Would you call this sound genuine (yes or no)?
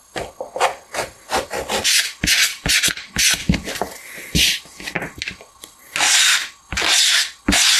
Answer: yes